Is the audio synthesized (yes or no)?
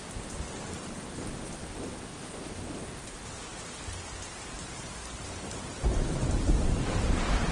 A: no